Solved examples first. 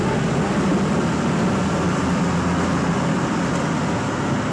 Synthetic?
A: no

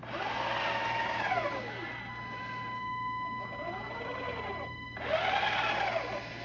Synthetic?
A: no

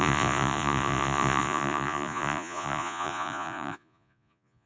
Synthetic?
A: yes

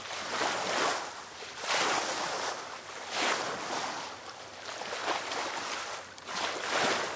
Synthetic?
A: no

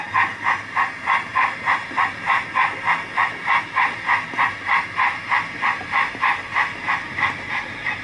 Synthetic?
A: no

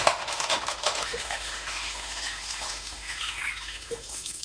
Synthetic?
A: yes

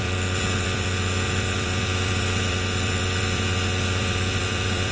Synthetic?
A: yes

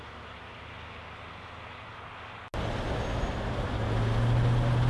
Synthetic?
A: no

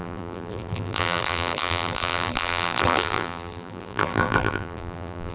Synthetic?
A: yes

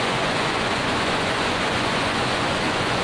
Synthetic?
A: yes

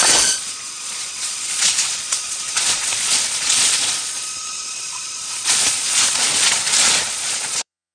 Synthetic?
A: yes